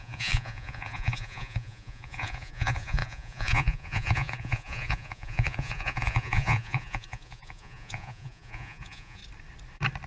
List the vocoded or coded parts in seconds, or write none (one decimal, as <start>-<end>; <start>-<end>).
0.0-9.2